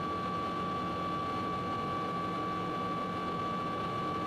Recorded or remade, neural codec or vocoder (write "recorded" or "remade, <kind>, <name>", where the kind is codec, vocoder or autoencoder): recorded